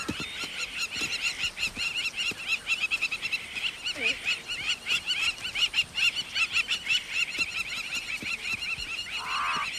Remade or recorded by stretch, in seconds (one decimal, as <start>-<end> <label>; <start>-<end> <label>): 0.0-9.8 recorded